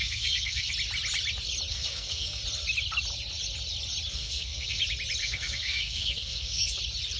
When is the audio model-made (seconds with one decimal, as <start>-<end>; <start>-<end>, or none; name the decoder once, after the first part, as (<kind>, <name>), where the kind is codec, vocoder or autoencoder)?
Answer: 0.0-0.7 (codec, SNAC); 1.7-2.4; 4.1-4.8; 5.2-6.8